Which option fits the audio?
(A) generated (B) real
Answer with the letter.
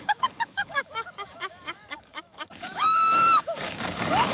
A